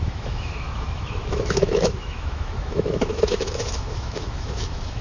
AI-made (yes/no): yes